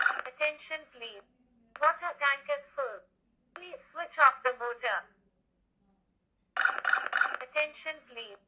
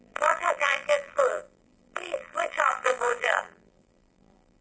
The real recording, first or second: first